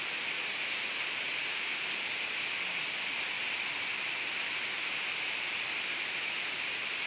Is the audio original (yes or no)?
yes